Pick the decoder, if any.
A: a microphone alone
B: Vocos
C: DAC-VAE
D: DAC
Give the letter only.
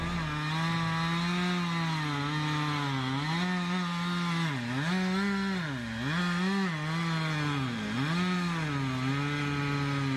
A